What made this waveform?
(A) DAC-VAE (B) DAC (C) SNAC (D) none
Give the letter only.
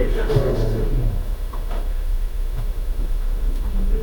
A